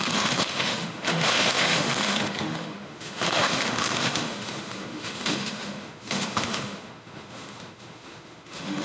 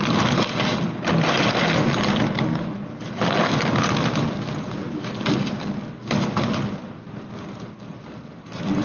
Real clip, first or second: second